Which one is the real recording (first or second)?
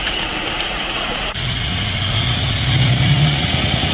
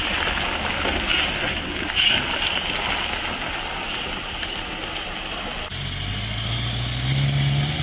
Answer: second